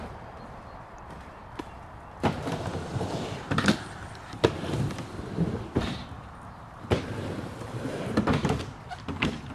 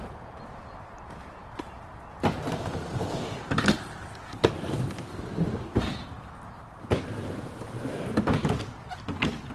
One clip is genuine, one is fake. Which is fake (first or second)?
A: first